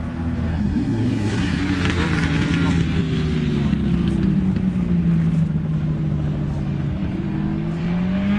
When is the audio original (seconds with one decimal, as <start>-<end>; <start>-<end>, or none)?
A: 0.0-0.5; 1.6-8.4